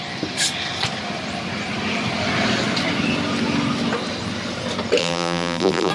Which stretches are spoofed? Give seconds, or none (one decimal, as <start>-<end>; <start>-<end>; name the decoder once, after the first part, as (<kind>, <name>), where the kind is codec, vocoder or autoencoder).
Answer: 5.0-5.9 (vocoder, BigVGAN v2)